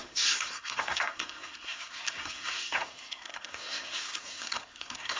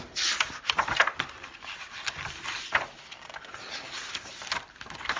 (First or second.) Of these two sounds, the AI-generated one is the first